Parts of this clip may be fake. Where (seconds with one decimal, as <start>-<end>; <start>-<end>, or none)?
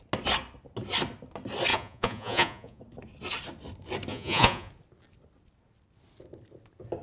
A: 1.7-2.8; 4.1-4.7